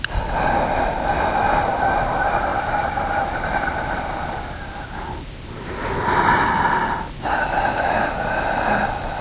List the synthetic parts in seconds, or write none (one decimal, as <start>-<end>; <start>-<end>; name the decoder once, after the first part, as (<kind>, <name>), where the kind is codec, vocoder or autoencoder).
none